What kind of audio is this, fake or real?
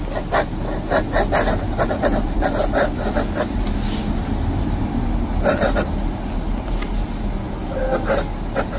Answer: real